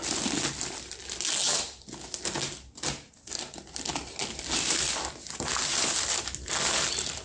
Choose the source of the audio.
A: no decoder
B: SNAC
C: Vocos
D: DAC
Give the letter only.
A